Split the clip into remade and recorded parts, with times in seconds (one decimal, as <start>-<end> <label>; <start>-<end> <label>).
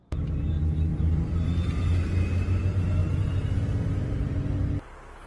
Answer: 0.0-0.9 recorded; 0.9-1.8 remade; 1.8-3.0 recorded; 3.0-4.3 remade; 4.3-5.3 recorded